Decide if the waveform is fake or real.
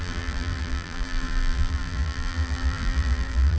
fake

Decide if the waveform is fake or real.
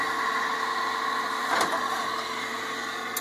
real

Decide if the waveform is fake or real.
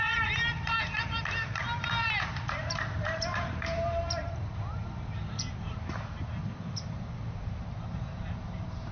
fake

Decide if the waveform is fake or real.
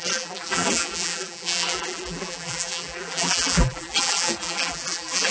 fake